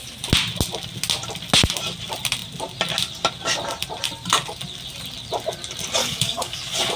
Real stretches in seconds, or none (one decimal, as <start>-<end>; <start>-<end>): 0.0-6.0; 6.6-7.0